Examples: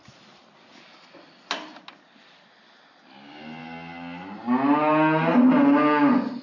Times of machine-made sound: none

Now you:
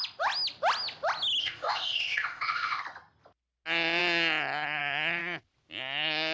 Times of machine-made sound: 1.4-2.8

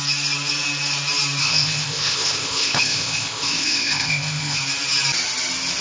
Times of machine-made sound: 1.4-4.6